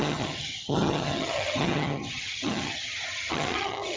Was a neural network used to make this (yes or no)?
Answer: yes